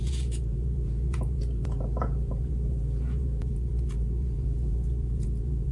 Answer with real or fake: fake